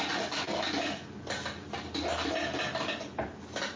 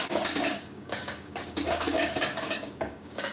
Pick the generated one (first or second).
second